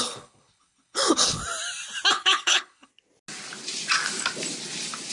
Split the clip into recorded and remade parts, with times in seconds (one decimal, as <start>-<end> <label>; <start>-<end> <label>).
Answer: 0.0-1.4 remade; 1.4-2.1 recorded; 2.1-2.9 remade; 2.9-5.1 recorded